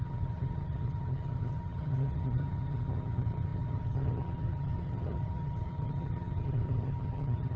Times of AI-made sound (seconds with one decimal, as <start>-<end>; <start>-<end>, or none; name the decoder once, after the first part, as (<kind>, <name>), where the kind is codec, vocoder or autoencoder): 0.0-7.6 (vocoder, HiFi-GAN)

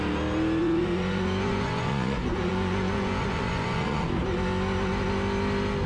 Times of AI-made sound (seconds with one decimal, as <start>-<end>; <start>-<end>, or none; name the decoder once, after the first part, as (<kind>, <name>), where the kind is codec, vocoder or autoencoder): 0.6-4.1 (vocoder, Vocos)

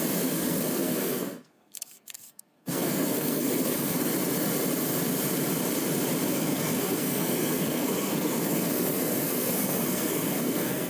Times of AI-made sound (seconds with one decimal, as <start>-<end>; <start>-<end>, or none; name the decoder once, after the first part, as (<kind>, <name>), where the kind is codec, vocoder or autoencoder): 0.0-4.1 (codec, SNAC); 6.3-10.9

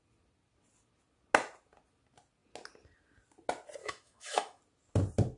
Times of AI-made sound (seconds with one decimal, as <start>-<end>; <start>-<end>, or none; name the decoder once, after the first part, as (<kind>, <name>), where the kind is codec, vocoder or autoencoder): 3.8-4.6 (autoencoder, DAC-VAE)

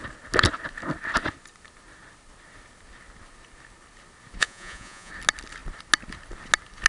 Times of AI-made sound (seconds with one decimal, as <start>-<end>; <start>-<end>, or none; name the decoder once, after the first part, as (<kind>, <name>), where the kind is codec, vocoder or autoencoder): 4.4-5.1 (vocoder, Vocos)

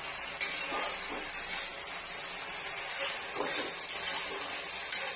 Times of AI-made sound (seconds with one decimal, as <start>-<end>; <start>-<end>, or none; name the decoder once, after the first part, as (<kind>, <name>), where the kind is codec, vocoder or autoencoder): 1.7-2.5 (vocoder, BigVGAN v2)